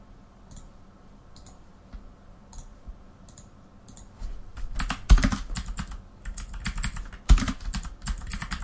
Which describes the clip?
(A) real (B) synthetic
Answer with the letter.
A